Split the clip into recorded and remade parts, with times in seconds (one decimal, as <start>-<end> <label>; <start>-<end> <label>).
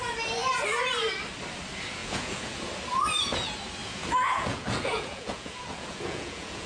0.0-2.0 recorded; 2.0-2.7 remade; 2.7-3.8 recorded; 3.8-6.7 remade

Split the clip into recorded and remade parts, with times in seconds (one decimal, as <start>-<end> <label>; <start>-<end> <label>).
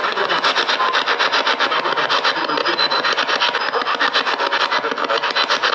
0.0-0.6 remade; 0.6-2.6 recorded; 2.6-3.2 remade; 3.2-5.7 recorded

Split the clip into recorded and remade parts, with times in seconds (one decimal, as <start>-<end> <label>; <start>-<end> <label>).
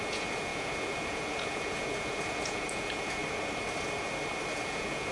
0.0-3.2 remade; 3.2-4.5 recorded; 4.5-5.1 remade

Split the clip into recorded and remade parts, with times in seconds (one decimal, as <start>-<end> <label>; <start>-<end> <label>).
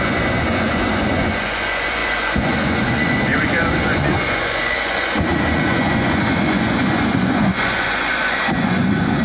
0.0-9.2 remade